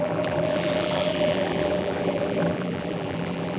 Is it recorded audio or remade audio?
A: remade